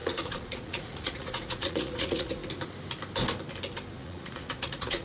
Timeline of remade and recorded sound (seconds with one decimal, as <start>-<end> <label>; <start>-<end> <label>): 0.0-2.4 remade; 2.4-4.0 recorded; 4.0-5.0 remade